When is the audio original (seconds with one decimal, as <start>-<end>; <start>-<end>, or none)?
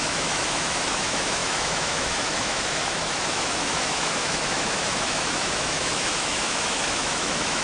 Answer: none